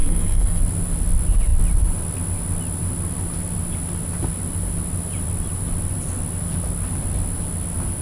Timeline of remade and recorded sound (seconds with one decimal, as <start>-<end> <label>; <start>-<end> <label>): 0.0-0.6 remade; 0.6-8.0 recorded